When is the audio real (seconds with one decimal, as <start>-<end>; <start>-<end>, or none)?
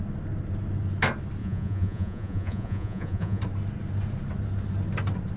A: 0.0-1.4; 3.4-5.4